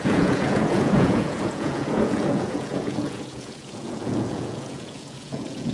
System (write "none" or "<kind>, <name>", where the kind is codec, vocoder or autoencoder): vocoder, Vocos